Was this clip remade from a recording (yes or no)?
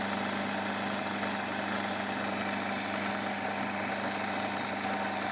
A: no